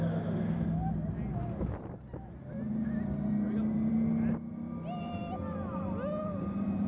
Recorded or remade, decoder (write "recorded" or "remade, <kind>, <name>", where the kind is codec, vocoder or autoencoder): recorded